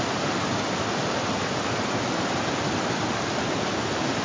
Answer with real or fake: real